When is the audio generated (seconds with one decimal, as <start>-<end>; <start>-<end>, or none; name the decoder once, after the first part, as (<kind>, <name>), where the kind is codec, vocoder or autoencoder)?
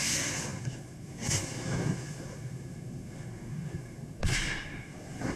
0.0-5.4 (codec, SNAC)